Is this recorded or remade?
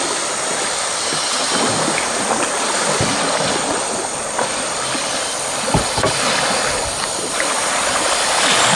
recorded